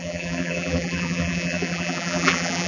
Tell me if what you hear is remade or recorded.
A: remade